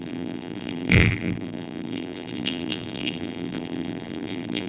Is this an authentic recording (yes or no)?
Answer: no